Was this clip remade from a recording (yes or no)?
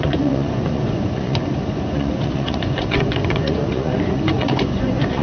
yes